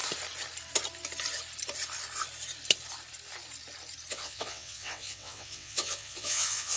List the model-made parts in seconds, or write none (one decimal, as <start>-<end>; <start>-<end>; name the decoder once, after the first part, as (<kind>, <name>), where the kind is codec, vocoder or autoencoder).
4.1-6.8 (vocoder, WaveNeXt)